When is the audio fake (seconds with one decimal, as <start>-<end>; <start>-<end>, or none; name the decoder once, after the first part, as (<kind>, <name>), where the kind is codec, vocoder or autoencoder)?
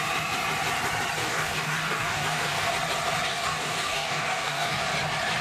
1.2-2.7 (codec, DAC); 3.3-4.8